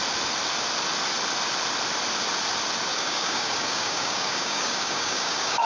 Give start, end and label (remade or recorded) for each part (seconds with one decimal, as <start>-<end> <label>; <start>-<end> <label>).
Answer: 0.0-2.9 recorded; 2.9-5.6 remade